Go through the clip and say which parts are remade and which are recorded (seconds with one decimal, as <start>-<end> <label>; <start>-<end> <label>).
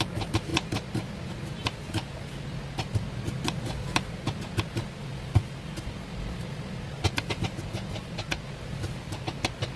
0.0-9.8 recorded